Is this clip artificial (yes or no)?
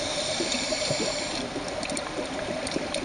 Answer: yes